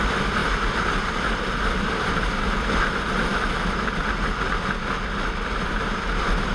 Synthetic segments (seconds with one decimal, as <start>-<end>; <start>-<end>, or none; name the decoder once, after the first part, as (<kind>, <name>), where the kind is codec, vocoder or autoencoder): 0.4-1.9 (vocoder, BigVGAN v2)

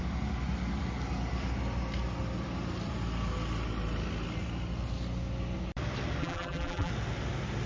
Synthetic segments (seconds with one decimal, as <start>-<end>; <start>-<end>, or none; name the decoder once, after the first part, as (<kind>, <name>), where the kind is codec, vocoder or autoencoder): 6.2-6.9 (vocoder, BigVGAN v2)

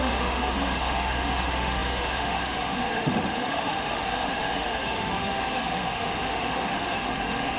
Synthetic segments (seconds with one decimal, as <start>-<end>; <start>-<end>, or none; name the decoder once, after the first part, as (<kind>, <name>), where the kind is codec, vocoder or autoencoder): 0.0-7.6 (autoencoder, DAC-VAE)

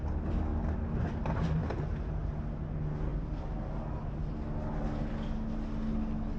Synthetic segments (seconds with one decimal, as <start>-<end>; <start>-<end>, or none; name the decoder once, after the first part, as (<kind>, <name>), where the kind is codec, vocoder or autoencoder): none

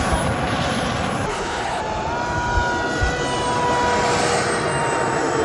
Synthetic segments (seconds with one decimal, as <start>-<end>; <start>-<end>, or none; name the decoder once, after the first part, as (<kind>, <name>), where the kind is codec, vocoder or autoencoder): 1.3-1.8 (codec, HILCodec)

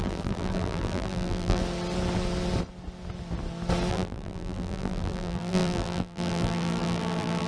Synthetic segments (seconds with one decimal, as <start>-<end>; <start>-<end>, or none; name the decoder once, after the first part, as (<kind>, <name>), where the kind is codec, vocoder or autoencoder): 0.0-1.6 (vocoder, BigVGAN v2); 3.9-7.5

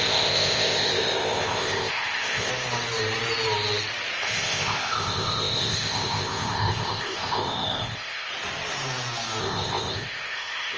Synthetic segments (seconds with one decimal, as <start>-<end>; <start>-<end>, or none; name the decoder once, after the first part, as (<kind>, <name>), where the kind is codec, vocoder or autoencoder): 0.0-2.5 (codec, ZipCodec); 4.2-8.3; 9.4-10.8

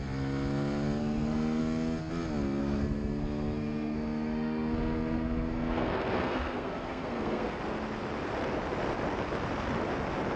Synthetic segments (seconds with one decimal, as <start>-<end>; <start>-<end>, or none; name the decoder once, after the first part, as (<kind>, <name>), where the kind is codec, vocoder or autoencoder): 1.0-1.6 (codec, SNAC); 2.6-7.6